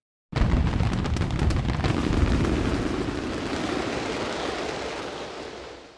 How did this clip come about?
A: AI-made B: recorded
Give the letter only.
B